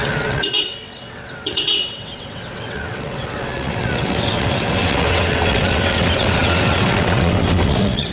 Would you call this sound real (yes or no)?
no